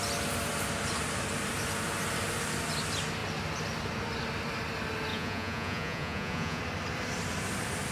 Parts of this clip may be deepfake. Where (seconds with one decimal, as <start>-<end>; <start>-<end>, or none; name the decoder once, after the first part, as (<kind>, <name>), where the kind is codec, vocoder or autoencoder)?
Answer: 5.1-6.6 (vocoder, Vocos)